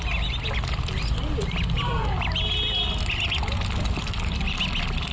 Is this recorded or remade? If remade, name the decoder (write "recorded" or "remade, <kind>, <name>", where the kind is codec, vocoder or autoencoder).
recorded